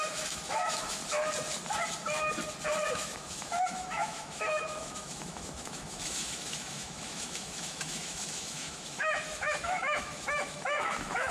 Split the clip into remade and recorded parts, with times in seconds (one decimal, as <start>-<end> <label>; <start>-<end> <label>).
0.0-1.0 remade; 1.0-2.9 recorded; 2.9-11.3 remade